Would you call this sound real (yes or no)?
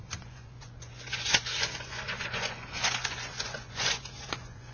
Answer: no